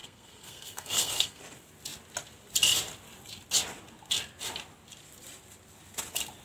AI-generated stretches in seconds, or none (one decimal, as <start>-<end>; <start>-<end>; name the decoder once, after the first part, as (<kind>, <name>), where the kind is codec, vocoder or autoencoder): 0.0-1.4 (codec, SNAC)